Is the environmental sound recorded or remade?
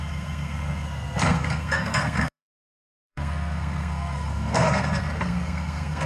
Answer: remade